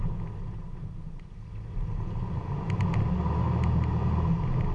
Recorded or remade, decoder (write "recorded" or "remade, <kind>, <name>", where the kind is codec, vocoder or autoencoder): recorded